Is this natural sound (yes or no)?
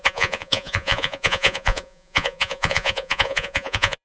no